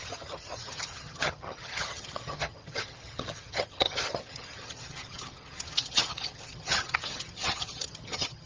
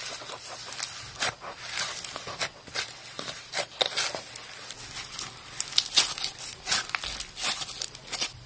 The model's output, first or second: first